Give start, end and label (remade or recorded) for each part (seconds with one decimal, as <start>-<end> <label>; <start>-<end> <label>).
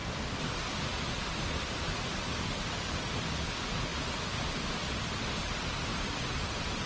0.0-3.0 remade; 3.0-5.9 recorded; 5.9-6.9 remade